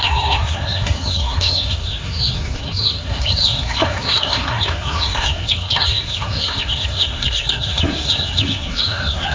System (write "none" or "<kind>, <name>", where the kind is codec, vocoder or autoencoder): codec, SNAC